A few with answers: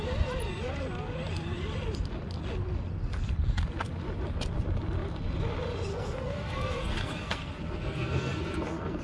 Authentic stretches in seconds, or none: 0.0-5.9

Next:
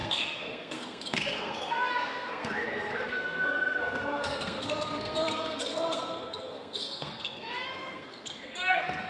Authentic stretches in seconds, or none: none